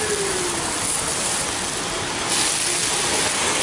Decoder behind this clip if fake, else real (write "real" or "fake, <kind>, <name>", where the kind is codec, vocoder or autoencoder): real